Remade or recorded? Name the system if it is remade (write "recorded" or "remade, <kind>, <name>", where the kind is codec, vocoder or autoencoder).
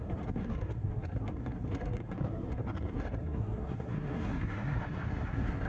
remade, codec, SNAC